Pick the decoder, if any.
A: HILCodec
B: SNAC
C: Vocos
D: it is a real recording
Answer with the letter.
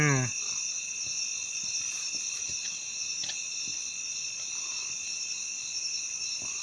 D